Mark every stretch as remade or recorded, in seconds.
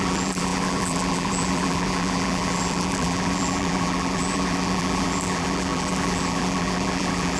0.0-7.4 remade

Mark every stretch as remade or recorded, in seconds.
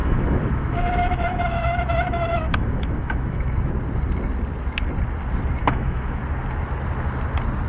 0.0-3.7 remade; 3.7-5.6 recorded; 5.6-6.2 remade; 6.2-7.7 recorded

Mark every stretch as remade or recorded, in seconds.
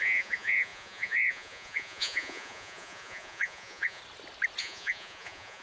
0.0-4.0 remade; 4.0-4.6 recorded; 4.6-5.6 remade